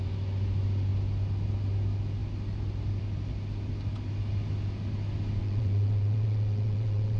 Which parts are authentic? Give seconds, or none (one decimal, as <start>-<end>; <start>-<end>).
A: 0.0-5.4